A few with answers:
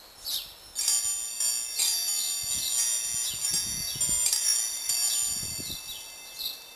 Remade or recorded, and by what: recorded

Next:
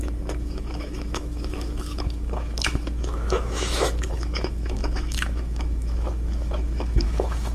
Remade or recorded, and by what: remade, autoencoder, DAC-VAE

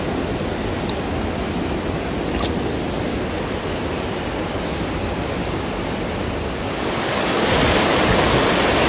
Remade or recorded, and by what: recorded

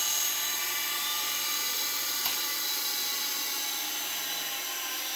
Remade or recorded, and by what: recorded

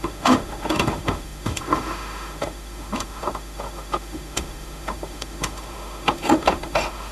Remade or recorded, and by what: remade, autoencoder, DAC-VAE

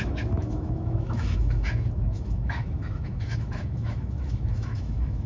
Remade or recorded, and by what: remade, autoencoder, DAC-VAE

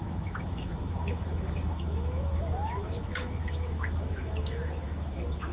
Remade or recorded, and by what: remade, autoencoder, DAC-VAE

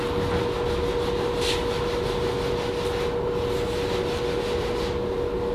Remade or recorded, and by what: recorded